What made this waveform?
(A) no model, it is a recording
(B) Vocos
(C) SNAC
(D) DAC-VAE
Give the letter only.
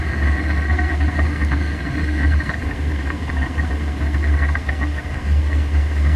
C